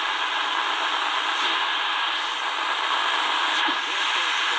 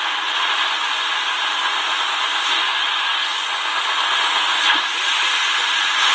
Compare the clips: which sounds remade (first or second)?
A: second